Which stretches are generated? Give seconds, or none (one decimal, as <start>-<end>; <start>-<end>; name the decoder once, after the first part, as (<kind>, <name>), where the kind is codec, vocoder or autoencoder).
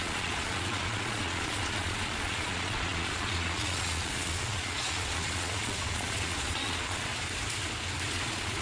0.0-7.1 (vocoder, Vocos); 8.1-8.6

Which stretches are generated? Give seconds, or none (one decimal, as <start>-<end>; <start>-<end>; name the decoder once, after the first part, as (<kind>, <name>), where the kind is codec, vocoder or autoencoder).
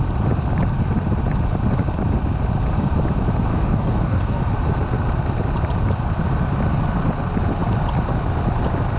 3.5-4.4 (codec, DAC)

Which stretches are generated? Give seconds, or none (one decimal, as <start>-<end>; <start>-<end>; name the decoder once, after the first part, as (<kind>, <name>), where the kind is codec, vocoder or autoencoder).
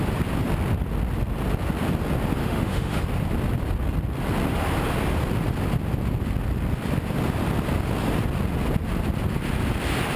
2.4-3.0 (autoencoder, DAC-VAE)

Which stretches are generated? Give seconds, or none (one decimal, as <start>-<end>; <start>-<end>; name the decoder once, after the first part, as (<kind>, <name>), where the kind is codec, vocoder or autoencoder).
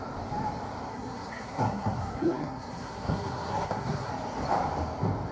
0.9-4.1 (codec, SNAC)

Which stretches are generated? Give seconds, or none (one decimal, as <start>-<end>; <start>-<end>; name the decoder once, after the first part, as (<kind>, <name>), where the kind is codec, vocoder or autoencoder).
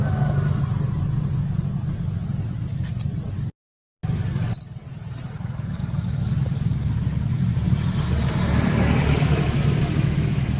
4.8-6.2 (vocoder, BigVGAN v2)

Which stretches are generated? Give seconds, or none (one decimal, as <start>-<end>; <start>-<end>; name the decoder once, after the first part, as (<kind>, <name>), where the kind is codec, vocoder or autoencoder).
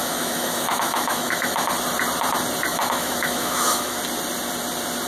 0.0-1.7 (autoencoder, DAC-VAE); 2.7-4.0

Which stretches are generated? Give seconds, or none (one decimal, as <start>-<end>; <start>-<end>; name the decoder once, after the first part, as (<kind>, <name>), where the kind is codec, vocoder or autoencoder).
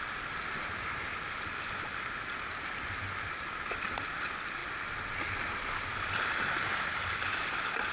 none